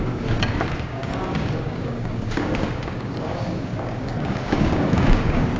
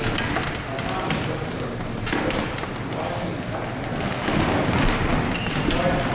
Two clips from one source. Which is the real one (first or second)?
second